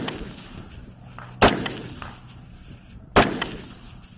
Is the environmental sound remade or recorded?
recorded